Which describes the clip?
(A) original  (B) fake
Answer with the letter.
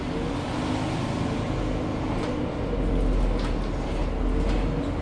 A